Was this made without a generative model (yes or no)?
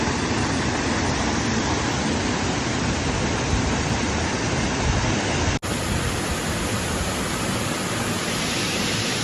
yes